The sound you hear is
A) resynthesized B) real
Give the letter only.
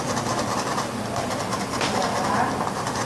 B